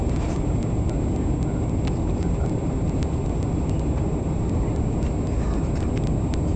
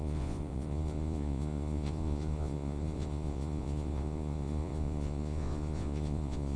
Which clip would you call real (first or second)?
first